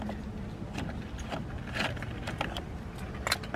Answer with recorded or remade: recorded